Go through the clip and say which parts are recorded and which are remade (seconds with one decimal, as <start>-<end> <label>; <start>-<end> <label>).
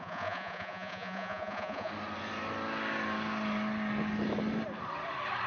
0.0-1.9 remade; 1.9-5.5 recorded